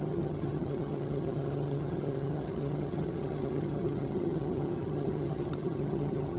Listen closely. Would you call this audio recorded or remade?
remade